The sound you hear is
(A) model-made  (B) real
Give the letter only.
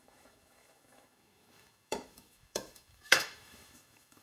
A